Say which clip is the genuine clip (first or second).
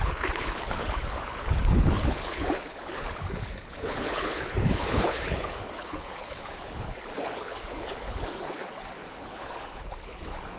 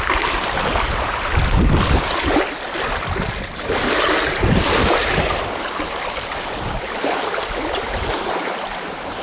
second